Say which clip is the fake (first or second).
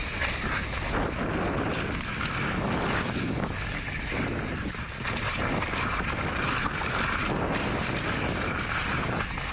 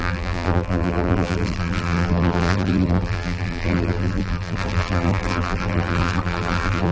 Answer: second